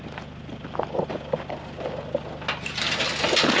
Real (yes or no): yes